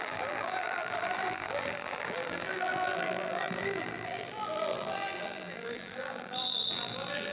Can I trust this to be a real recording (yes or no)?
no